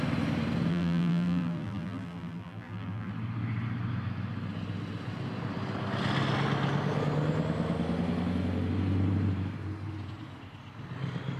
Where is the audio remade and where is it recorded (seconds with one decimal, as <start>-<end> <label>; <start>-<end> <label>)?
0.0-0.7 recorded; 0.7-3.1 remade; 3.1-11.4 recorded